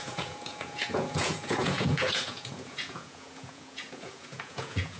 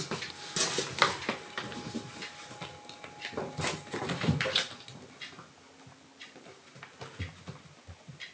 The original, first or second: second